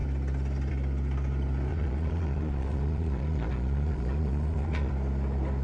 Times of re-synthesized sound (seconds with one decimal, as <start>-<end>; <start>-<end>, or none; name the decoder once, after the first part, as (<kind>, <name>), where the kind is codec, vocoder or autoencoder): 1.7-4.9 (vocoder, Vocos)